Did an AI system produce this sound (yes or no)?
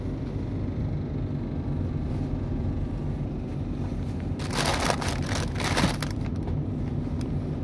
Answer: no